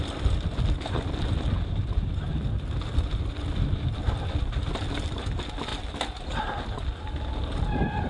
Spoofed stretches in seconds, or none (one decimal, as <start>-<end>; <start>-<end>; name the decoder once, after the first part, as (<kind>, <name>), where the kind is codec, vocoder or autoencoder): none